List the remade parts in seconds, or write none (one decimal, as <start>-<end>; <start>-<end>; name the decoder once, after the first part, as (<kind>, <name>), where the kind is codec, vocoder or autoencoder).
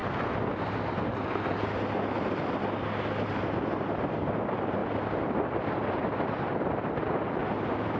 3.4-4.8 (vocoder, BigVGAN v2); 6.7-7.4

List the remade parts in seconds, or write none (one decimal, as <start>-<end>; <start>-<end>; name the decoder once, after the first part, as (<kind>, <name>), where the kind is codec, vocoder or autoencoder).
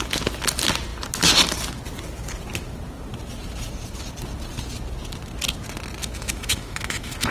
6.0-7.3 (autoencoder, DAC-VAE)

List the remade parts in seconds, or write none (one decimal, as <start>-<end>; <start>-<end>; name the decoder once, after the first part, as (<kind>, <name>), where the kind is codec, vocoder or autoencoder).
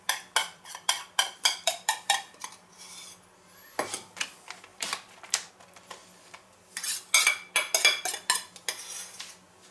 0.4-2.5 (vocoder, BigVGAN v2); 4.7-5.5; 6.0-6.8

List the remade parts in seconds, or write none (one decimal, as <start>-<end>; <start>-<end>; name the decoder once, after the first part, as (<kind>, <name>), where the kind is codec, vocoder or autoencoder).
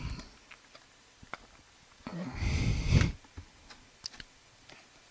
none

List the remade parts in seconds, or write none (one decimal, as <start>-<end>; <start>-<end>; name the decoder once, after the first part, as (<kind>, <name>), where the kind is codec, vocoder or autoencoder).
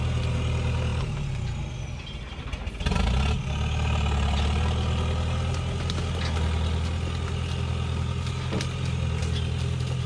none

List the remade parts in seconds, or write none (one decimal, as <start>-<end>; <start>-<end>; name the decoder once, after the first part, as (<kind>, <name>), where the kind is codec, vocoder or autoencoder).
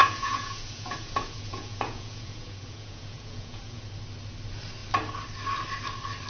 0.0-3.8 (vocoder, Vocos)